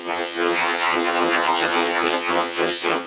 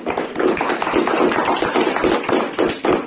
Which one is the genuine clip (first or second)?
second